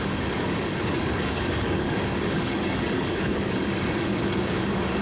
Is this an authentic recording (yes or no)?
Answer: no